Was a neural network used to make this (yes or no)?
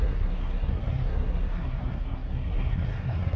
yes